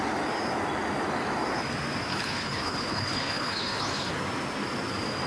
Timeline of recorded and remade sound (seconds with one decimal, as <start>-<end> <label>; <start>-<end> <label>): 0.0-2.1 recorded; 2.1-4.1 remade; 4.1-5.3 recorded